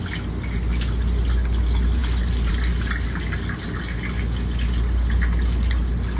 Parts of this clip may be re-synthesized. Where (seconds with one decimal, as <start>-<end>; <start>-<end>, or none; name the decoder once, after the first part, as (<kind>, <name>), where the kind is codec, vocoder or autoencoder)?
none